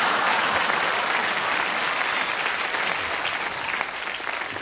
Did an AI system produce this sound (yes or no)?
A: no